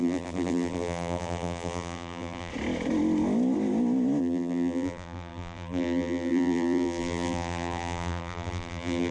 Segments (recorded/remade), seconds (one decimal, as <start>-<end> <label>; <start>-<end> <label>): 0.0-2.5 remade; 2.5-4.2 recorded; 4.2-9.1 remade